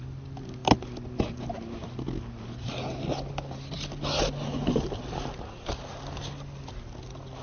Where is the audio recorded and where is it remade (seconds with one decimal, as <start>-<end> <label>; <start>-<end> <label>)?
0.0-7.4 recorded